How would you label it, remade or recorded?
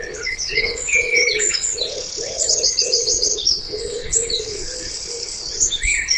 remade